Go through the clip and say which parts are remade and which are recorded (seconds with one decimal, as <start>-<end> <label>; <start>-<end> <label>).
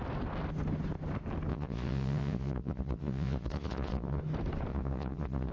0.0-1.5 recorded; 1.5-4.2 remade; 4.2-4.7 recorded; 4.7-5.5 remade